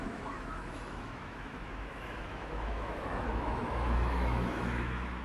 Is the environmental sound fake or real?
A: fake